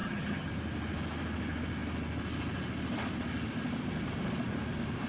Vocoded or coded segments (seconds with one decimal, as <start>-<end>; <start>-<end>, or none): 0.0-0.5